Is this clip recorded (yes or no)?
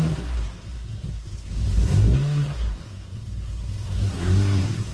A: no